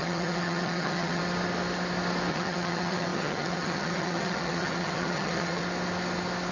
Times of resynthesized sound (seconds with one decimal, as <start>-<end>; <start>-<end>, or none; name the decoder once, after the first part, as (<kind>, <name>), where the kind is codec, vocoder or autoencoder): 0.0-1.2 (vocoder, HiFi-GAN); 2.3-5.6